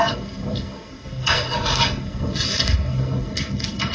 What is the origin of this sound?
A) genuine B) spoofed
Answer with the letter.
B